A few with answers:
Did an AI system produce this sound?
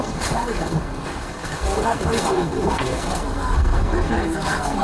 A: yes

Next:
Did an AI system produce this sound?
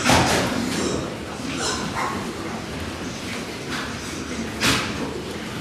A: no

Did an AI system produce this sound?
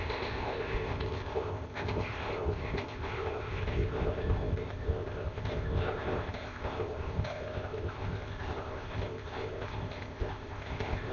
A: yes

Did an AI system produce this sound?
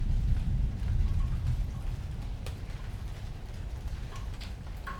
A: yes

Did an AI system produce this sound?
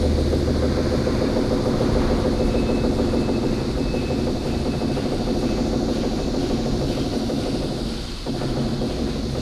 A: no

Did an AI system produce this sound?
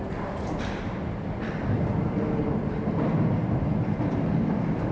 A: no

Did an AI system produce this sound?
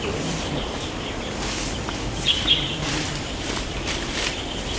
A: yes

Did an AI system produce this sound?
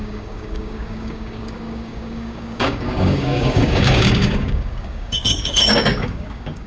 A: yes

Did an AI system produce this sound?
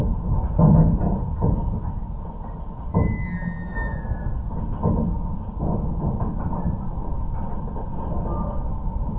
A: no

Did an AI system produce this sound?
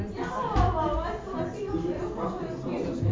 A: no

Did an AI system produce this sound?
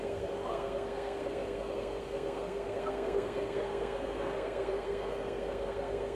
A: yes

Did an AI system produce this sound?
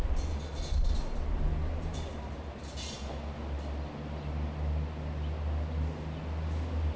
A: no